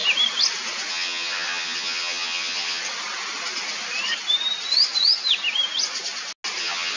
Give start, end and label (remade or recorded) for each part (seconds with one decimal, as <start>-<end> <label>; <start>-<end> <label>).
0.0-0.9 recorded; 0.9-2.8 remade; 2.8-6.6 recorded; 6.6-7.0 remade